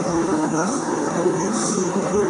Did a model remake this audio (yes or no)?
yes